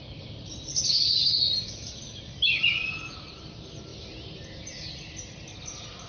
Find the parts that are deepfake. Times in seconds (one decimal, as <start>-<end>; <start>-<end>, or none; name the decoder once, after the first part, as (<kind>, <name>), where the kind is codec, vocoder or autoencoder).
none